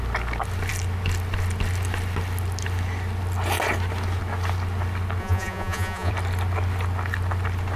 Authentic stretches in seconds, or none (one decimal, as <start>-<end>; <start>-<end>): 0.0-5.2; 6.1-7.8

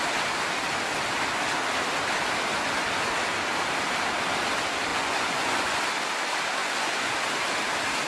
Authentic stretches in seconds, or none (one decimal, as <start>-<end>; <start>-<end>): 0.0-4.9; 5.8-6.6; 7.1-8.1

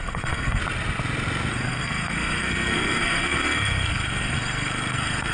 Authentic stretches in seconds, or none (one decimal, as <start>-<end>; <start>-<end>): 0.6-1.5

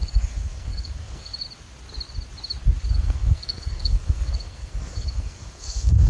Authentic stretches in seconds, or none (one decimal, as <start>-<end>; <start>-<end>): 1.3-2.9

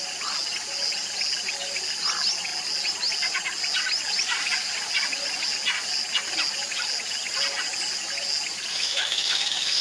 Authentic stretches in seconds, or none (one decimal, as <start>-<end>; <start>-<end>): 0.0-8.7

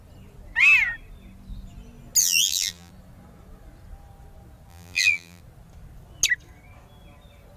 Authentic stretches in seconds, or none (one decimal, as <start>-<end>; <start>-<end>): 0.0-2.2; 2.9-4.7; 5.4-7.6

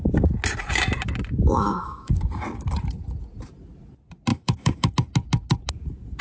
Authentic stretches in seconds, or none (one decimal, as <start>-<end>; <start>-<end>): 0.0-1.4; 2.1-4.3; 4.9-6.2